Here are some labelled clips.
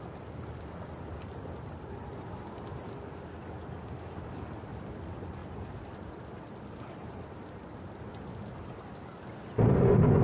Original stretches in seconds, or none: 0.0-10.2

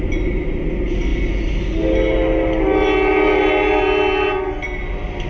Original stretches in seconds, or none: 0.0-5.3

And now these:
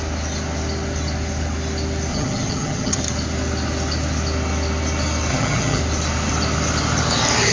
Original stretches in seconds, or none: 0.0-2.1; 3.0-5.3; 5.8-7.5

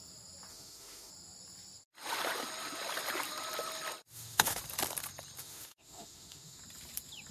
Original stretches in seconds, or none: 0.0-0.5; 1.1-4.1; 4.6-5.4; 6.6-7.3

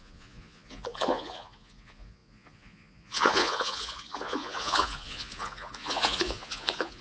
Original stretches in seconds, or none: none